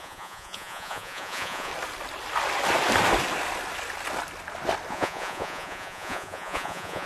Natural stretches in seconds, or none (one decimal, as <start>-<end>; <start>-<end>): 1.7-4.9